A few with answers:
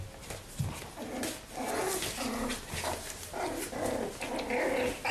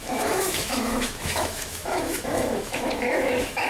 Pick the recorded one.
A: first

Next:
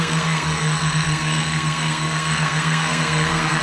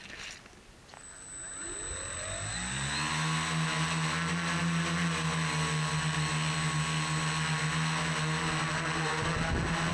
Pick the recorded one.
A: second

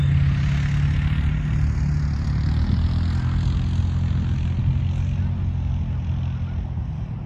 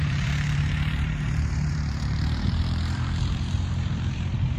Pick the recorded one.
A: first